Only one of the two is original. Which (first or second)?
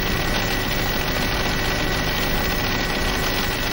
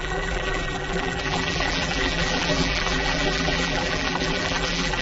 first